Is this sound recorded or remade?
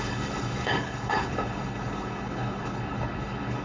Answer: remade